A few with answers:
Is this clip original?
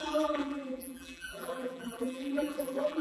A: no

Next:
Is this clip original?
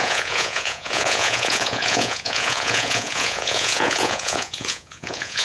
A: no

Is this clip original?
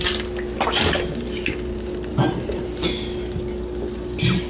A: yes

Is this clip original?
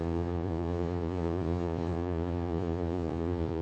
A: no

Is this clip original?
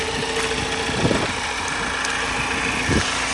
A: yes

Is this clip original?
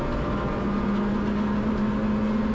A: yes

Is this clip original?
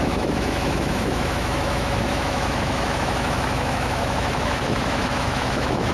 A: no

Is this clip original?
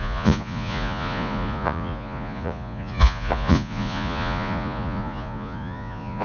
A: no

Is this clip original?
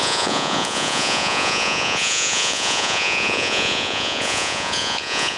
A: no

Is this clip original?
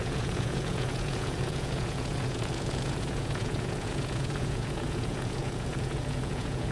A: no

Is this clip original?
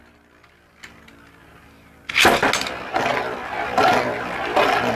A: yes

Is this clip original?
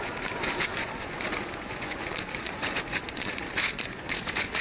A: no